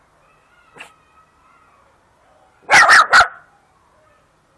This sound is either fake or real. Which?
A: real